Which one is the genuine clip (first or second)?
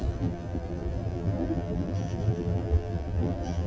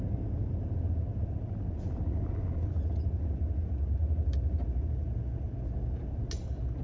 second